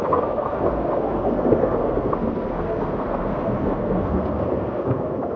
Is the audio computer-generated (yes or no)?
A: yes